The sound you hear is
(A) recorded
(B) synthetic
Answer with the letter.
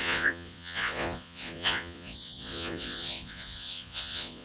B